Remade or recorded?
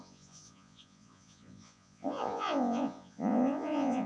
remade